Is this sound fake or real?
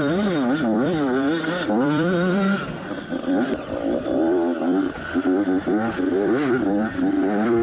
fake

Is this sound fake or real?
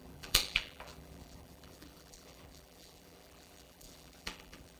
fake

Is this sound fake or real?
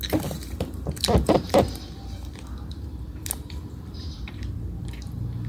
fake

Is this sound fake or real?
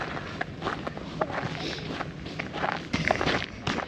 real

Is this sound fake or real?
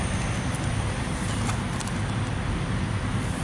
real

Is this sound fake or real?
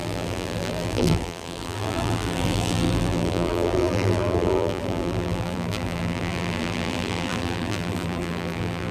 fake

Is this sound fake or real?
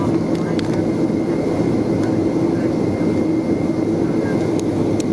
real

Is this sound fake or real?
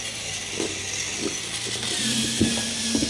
real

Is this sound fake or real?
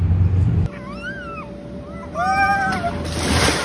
real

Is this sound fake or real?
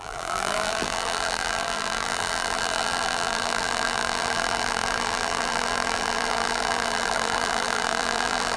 fake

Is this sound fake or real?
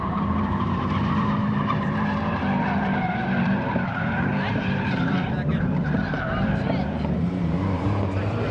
fake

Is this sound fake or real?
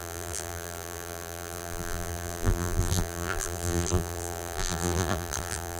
fake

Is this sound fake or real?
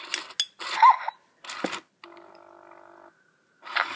real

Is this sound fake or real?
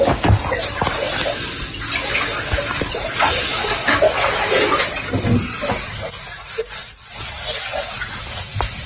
real